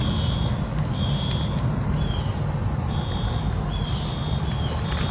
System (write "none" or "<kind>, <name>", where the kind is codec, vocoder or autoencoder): none